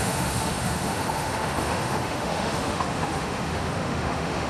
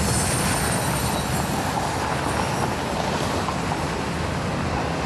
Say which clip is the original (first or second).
second